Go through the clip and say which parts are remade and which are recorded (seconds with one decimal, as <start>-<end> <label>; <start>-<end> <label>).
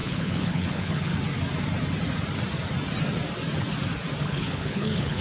0.0-1.1 remade; 1.1-4.2 recorded; 4.2-5.2 remade